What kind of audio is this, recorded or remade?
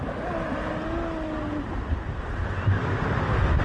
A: recorded